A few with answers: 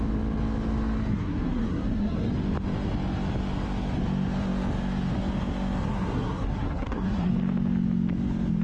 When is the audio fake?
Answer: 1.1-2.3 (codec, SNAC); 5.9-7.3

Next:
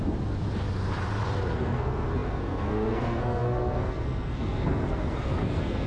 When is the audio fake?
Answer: 1.5-5.9 (codec, SNAC)

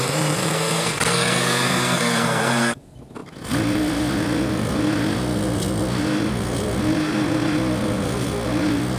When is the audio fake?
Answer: 0.4-2.8 (codec, SNAC)

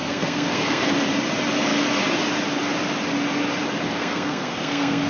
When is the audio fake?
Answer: 0.0-0.9 (codec, SNAC); 4.0-5.1

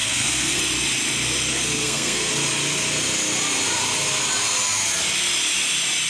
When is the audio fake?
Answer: 0.0-0.6 (codec, SNAC); 1.5-2.3

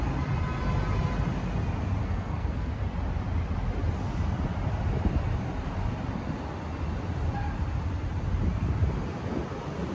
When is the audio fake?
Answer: 2.0-2.7 (codec, SNAC)

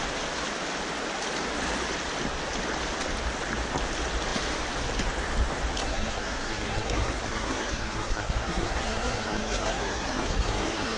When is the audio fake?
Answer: 5.8-11.0 (codec, SNAC)